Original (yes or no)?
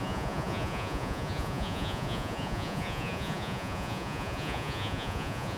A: no